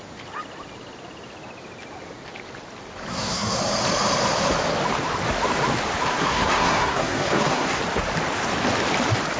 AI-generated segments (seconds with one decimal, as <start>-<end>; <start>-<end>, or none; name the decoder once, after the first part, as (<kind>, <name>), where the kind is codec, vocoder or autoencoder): 3.1-3.6 (codec, SNAC); 6.1-7.8